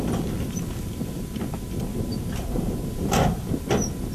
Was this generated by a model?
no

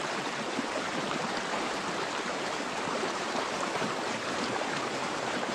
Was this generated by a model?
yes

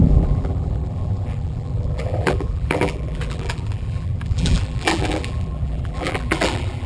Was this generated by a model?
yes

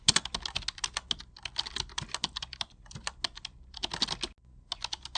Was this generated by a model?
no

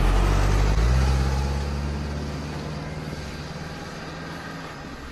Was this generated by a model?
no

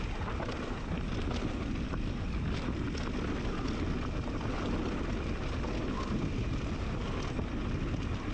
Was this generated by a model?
no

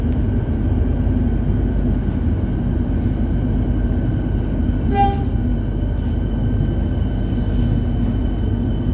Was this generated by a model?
no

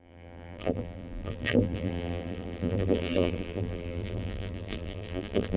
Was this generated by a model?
yes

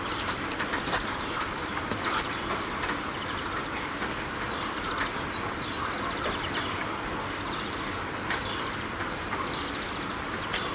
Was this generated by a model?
yes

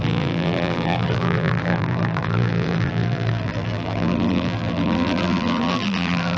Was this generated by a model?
yes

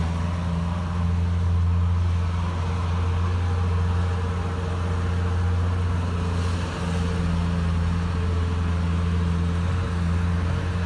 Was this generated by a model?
no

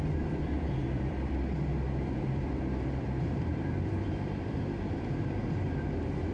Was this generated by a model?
yes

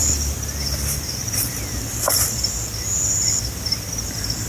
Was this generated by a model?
yes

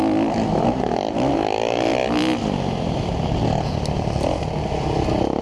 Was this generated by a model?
no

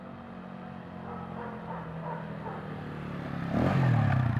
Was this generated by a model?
no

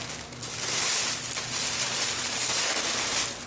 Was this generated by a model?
no